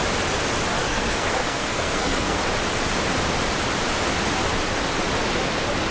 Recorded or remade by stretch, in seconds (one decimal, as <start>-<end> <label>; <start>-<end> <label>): 0.0-0.8 recorded; 0.8-2.4 remade; 2.4-5.9 recorded